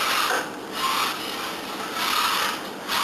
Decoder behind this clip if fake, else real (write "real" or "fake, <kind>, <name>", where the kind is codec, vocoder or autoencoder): real